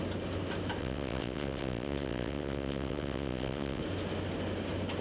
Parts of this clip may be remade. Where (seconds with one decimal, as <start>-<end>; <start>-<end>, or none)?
0.8-3.8